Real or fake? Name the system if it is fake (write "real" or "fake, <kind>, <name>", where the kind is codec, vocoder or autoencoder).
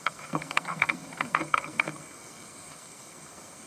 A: fake, codec, SNAC